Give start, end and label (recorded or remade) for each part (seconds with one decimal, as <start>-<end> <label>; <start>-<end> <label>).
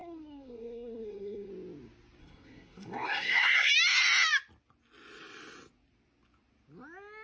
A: 0.0-1.5 remade; 1.5-2.2 recorded; 2.2-3.7 remade; 3.7-7.2 recorded